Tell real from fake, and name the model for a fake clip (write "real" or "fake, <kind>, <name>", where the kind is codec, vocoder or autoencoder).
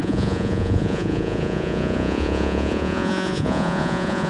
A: fake, vocoder, Vocos